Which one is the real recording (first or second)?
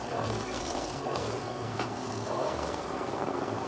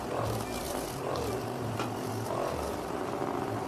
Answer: second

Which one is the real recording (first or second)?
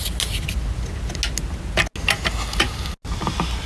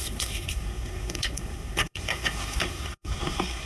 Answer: first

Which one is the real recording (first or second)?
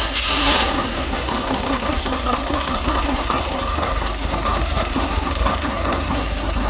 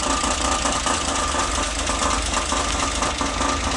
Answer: second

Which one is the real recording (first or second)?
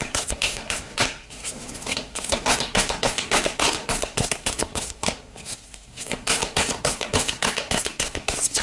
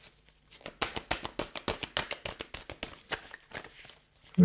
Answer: second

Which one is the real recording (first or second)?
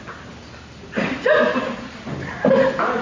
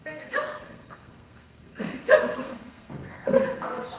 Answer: first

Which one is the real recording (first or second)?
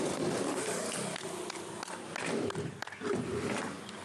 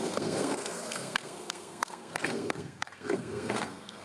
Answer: first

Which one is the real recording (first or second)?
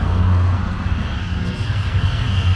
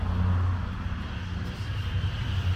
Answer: second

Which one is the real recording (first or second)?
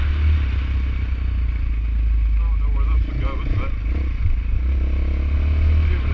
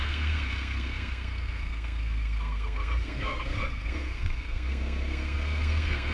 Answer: first